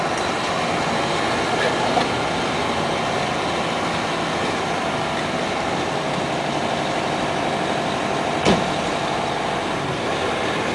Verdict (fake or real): real